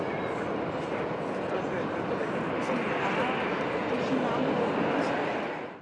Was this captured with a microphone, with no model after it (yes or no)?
yes